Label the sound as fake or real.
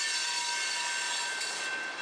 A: real